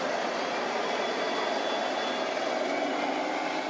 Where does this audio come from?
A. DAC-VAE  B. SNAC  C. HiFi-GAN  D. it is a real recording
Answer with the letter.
D